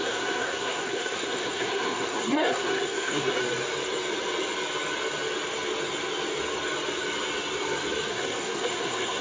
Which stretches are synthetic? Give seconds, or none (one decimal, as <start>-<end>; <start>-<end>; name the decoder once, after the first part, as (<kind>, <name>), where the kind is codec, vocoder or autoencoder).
0.0-3.4 (codec, SNAC); 8.1-9.2